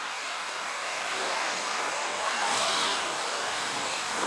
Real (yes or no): no